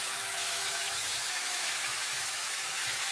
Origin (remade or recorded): remade